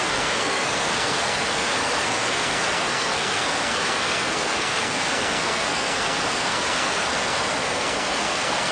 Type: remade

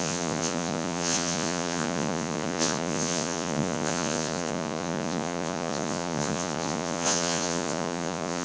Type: remade